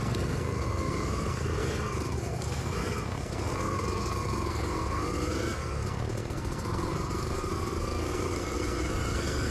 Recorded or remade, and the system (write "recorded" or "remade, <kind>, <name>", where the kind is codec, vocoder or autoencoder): remade, codec, SNAC